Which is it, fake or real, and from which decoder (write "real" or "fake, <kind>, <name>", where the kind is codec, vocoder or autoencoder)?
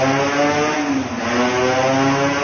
real